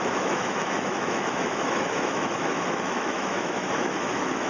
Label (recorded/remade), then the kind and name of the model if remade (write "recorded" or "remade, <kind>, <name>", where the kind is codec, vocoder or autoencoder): remade, autoencoder, DAC-VAE